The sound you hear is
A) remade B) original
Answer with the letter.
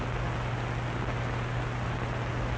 B